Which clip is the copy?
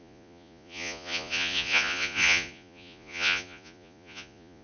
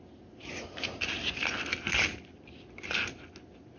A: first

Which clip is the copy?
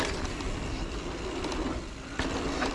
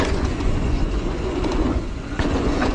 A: second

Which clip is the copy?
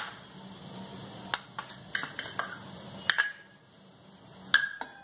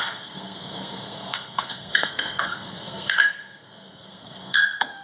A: second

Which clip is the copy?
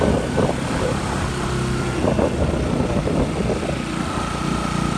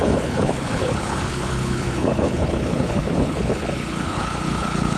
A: second